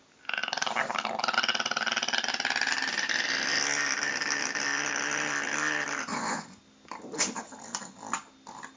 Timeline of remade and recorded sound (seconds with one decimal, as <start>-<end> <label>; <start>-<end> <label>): 0.0-6.1 recorded; 6.1-6.6 remade; 6.6-8.8 recorded